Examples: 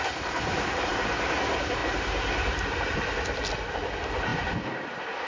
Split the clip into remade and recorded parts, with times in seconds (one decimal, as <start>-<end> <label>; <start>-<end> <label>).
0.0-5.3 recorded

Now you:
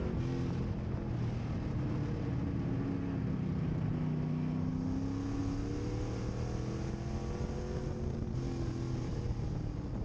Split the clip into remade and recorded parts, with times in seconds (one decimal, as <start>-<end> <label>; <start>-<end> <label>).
0.0-10.0 recorded

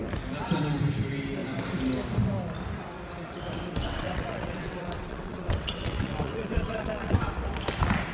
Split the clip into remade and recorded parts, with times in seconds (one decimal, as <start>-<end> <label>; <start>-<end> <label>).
0.0-3.8 recorded; 3.8-7.3 remade; 7.3-8.1 recorded

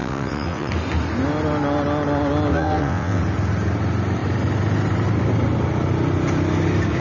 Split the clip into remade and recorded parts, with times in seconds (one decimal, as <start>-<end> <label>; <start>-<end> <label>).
0.0-0.7 remade; 0.7-2.5 recorded; 2.5-3.2 remade; 3.2-7.0 recorded